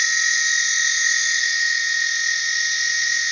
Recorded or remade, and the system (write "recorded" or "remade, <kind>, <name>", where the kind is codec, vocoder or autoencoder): recorded